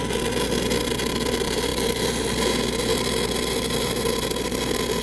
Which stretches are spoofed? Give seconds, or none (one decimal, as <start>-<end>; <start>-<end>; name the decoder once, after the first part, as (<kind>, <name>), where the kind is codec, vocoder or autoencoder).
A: none